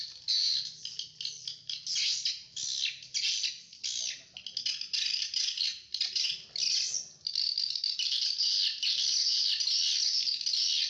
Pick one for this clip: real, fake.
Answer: real